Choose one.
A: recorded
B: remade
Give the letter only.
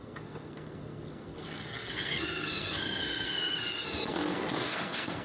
B